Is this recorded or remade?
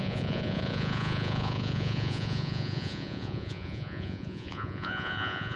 remade